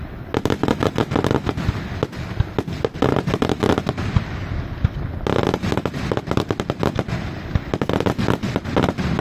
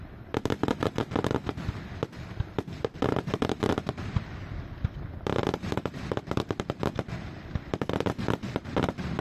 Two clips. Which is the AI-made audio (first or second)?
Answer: second